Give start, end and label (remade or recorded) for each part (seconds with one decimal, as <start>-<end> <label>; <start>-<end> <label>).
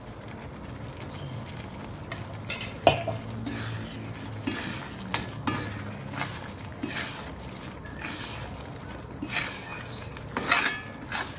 0.0-11.4 recorded